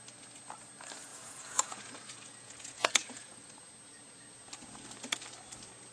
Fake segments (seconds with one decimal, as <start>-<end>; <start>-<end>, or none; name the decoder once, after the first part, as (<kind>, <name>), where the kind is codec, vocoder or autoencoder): 1.1-3.5 (vocoder, Vocos)